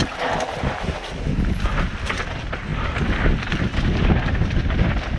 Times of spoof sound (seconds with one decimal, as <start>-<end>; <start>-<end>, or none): none